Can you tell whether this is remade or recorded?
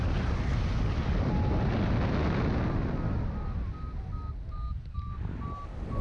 recorded